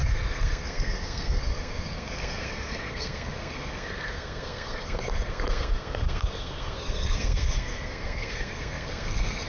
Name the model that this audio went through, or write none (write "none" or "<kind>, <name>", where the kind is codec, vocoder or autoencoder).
codec, SNAC